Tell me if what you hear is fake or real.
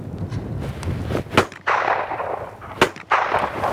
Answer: real